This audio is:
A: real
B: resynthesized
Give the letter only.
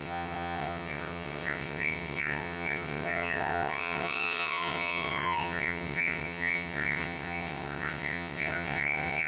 B